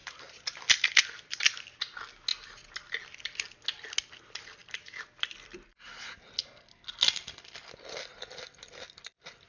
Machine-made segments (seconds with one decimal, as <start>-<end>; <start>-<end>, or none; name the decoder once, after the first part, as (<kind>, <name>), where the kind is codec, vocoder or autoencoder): 0.0-1.0 (vocoder, BigVGAN v2)